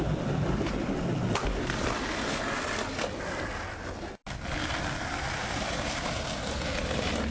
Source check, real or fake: real